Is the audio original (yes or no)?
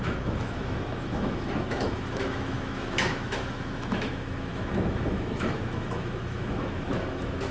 no